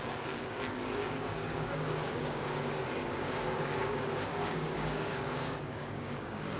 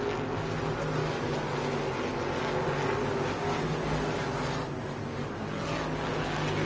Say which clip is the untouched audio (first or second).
second